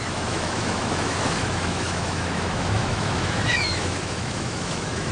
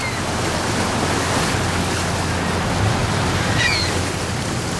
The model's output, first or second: first